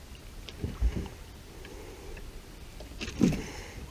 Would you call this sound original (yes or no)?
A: no